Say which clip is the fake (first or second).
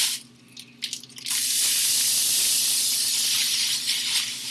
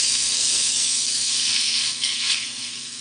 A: second